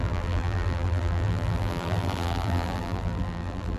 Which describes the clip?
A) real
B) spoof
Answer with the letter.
B